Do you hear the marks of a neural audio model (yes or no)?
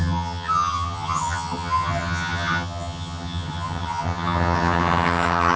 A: yes